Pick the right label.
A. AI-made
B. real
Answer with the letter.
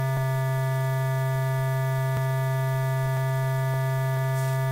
B